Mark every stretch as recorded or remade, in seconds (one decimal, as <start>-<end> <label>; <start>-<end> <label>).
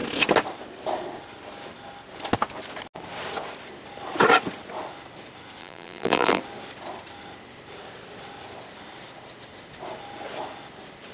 0.0-5.6 recorded; 5.6-6.4 remade; 6.4-11.1 recorded